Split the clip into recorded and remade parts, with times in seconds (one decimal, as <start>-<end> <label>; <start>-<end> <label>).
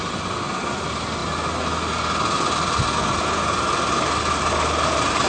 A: 0.0-5.3 recorded